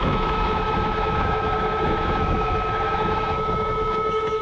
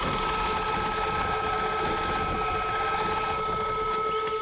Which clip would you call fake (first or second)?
first